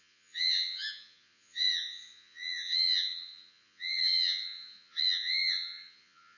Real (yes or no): no